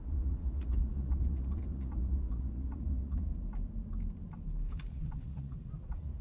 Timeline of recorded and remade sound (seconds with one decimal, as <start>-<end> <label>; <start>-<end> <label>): 0.0-3.3 remade; 3.3-4.7 recorded; 4.7-6.2 remade